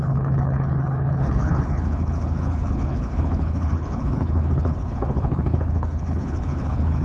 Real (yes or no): no